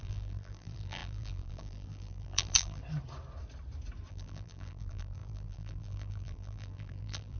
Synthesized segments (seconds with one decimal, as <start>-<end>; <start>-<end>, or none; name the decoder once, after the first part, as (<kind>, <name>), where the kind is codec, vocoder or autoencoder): 0.0-2.8 (vocoder, BigVGAN v2); 4.1-7.4